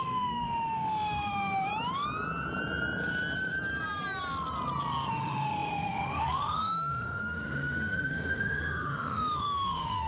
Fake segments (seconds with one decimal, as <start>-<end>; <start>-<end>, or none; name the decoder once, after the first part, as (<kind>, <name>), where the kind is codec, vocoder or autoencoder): 0.0-1.7 (autoencoder, DAC-VAE); 5.1-10.1